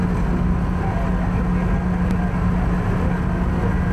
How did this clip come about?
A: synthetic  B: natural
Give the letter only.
B